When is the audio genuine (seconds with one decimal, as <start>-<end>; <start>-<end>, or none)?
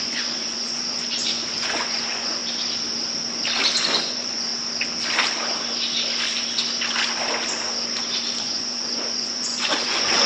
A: 2.4-3.8; 4.5-8.4